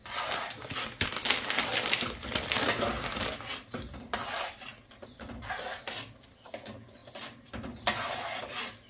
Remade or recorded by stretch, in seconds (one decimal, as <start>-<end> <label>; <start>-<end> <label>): 0.0-8.9 recorded